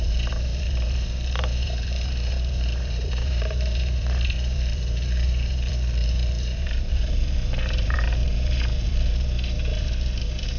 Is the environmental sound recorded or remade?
remade